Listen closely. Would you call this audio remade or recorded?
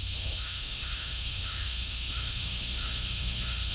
remade